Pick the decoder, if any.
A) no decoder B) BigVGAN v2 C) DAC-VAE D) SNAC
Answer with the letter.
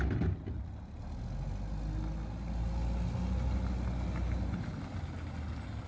A